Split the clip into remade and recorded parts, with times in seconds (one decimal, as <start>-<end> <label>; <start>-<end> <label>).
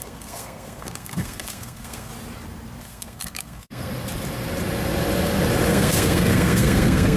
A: 0.0-2.1 remade; 2.1-2.8 recorded; 2.8-3.9 remade; 3.9-5.7 recorded; 5.7-7.2 remade